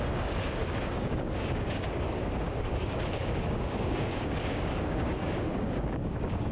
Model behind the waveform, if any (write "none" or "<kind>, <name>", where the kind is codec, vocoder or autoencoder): codec, DAC